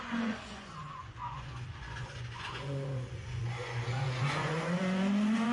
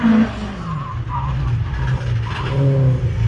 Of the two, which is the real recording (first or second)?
second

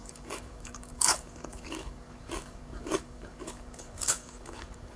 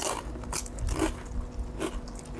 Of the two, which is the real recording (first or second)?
second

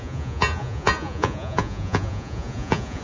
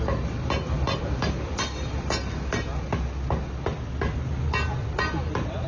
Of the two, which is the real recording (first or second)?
second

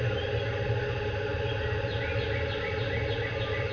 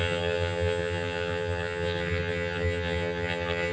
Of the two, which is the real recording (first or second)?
first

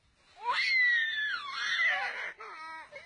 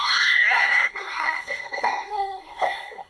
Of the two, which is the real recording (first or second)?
first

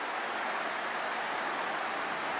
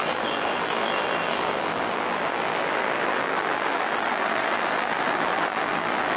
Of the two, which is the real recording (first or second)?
first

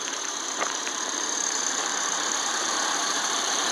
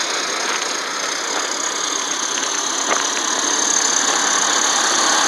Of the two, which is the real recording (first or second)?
second